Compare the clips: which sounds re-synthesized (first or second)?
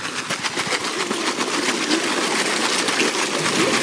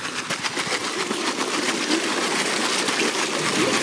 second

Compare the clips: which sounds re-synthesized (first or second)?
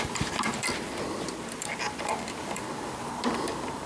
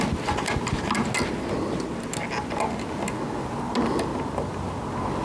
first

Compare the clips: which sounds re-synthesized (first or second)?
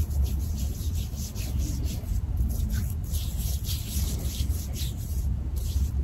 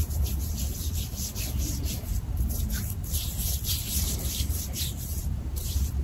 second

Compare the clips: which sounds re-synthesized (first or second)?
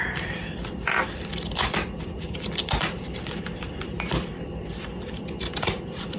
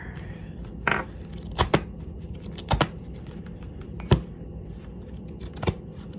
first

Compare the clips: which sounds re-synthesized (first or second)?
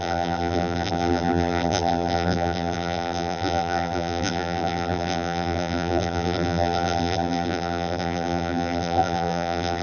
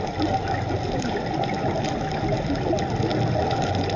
first